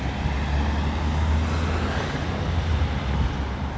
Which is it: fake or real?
real